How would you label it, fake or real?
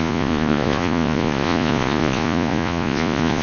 fake